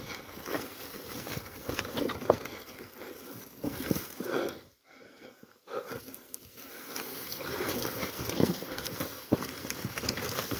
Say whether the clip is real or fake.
fake